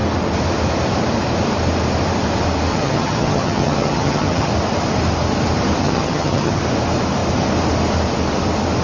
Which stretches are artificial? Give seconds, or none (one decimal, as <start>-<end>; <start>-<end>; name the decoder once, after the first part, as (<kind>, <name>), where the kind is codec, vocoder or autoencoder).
2.7-4.5 (vocoder, HiFi-GAN); 5.8-6.6